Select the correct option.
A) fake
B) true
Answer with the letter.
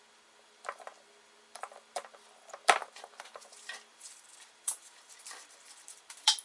A